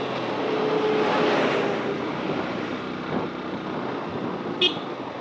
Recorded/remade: recorded